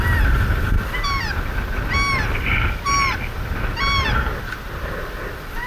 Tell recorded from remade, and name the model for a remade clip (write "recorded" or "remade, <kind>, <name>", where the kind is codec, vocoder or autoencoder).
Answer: recorded